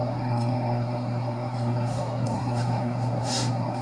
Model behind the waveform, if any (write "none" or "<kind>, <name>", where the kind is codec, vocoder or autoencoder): codec, SNAC